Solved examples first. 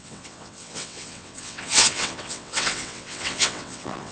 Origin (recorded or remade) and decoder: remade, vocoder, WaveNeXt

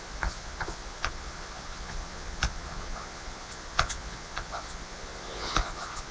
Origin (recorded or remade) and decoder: remade, vocoder, Vocos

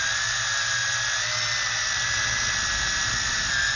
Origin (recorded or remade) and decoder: recorded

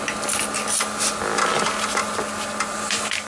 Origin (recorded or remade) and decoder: recorded